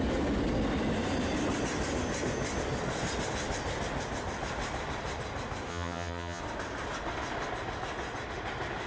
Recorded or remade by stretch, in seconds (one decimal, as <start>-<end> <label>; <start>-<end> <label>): 0.0-5.7 recorded; 5.7-6.4 remade; 6.4-8.9 recorded